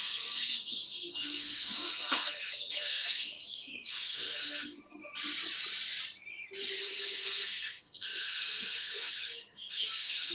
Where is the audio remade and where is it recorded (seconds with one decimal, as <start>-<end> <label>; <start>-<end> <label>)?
0.0-5.0 remade; 5.0-6.8 recorded; 6.8-10.3 remade